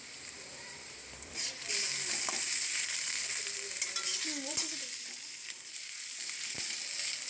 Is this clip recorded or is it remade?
remade